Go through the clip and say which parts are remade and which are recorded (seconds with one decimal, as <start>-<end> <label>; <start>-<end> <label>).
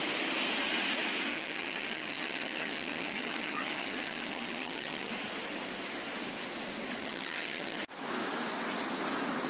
0.0-1.3 recorded; 1.3-5.1 remade; 5.1-7.0 recorded; 7.0-7.8 remade; 7.8-9.5 recorded